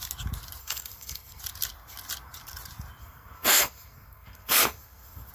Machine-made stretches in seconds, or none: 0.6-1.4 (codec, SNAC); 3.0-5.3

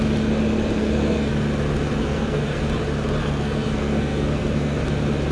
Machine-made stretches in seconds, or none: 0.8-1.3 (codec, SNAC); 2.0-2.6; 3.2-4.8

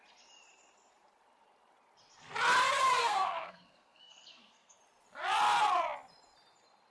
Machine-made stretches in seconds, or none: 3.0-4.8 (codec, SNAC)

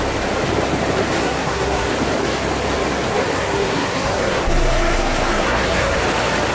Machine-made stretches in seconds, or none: 1.2-1.9 (codec, SNAC); 3.2-6.0

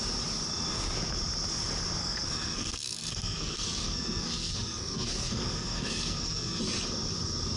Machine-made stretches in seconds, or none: 2.0-6.6 (codec, SNAC)

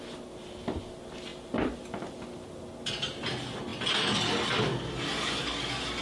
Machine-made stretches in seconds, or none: none

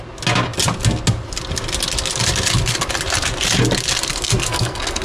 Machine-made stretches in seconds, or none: 4.1-5.0 (codec, SNAC)

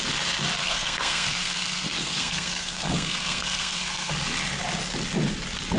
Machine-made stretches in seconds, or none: 0.6-4.1 (codec, SNAC)